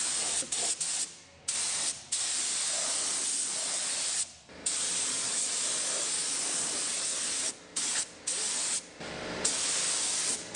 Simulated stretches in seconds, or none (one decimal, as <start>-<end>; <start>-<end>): none